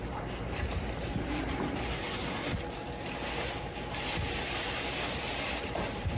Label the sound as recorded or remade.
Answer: remade